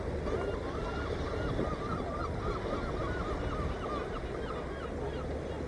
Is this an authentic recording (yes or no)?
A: yes